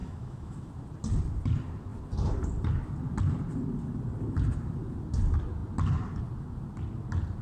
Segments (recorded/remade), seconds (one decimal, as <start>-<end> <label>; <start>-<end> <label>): 0.0-0.7 remade; 0.7-7.4 recorded